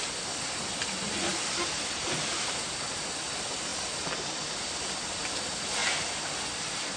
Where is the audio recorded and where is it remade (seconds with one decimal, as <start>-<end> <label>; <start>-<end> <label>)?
0.0-7.0 recorded